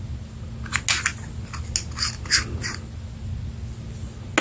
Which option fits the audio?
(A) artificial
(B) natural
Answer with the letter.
B